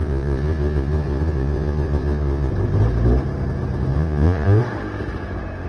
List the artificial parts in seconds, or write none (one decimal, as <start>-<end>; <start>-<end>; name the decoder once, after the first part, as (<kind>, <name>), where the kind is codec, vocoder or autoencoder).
0.0-2.5 (vocoder, Vocos); 3.9-4.6